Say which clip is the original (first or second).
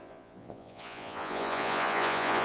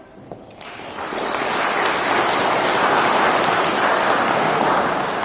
second